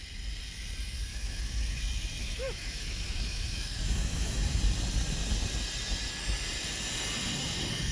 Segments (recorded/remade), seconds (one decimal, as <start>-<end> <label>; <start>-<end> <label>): 0.0-1.1 recorded; 1.1-1.8 remade; 1.8-2.2 recorded; 2.2-4.6 remade; 4.6-7.9 recorded